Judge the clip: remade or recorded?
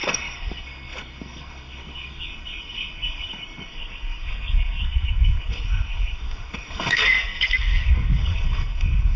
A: remade